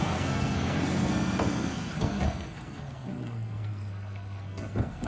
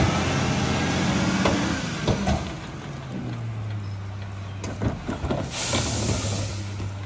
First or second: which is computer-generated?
first